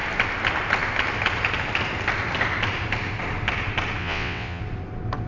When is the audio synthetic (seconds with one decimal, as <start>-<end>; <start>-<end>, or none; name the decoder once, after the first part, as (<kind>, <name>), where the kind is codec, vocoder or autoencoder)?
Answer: 4.0-4.6 (vocoder, WaveNeXt)